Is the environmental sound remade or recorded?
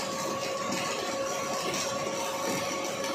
recorded